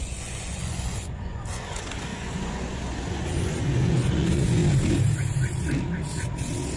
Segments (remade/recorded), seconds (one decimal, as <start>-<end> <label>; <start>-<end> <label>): 0.0-4.6 remade; 4.6-6.8 recorded